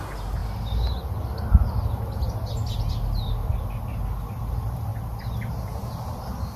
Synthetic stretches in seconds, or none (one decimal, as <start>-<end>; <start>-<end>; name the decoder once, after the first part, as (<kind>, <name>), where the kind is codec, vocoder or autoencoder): 0.0-0.4 (vocoder, BigVGAN v2); 4.4-4.9; 5.5-6.6